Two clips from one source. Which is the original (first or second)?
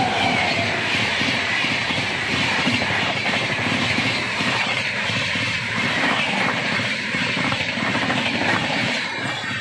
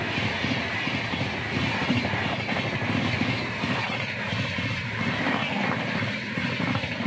second